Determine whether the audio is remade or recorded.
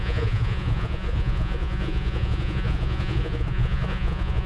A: remade